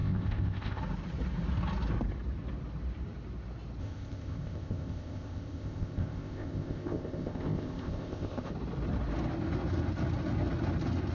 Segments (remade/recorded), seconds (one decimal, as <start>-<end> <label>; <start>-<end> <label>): 0.0-0.8 remade; 0.8-3.8 recorded; 3.8-8.5 remade; 8.5-11.1 recorded